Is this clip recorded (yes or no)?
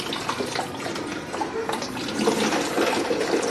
yes